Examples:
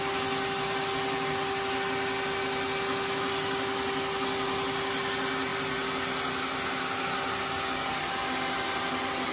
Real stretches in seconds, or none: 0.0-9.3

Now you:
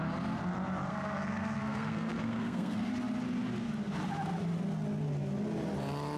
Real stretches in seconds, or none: 0.0-0.9; 2.9-6.2

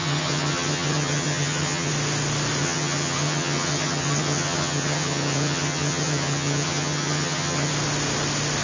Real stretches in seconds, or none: 1.9-2.6; 7.7-8.6

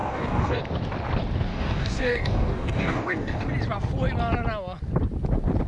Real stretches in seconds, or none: 0.6-1.5; 3.5-5.7

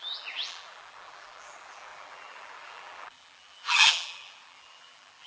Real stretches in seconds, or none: none

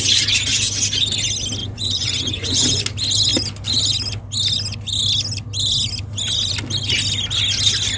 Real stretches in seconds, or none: 0.0-1.6; 2.8-8.0

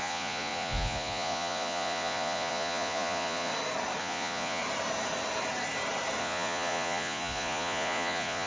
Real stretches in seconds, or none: 3.5-4.0; 4.6-6.2